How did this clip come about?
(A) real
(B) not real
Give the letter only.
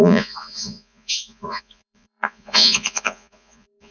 B